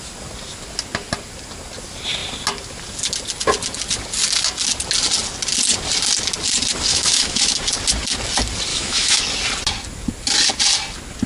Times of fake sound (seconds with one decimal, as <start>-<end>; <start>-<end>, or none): 6.9-7.6; 8.7-9.2